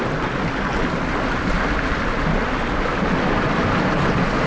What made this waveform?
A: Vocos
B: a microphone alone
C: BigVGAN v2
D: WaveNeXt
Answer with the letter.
B